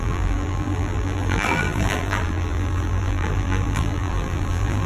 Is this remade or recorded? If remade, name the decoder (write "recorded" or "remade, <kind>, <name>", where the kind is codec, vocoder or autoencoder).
remade, vocoder, BigVGAN v2